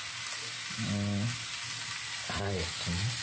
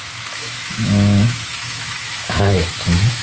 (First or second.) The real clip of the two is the first